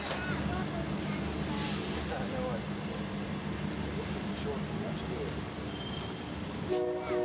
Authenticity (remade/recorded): recorded